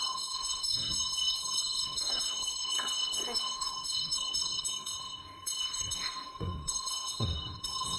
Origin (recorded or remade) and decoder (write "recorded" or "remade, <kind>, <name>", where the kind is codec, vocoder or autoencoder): remade, codec, SNAC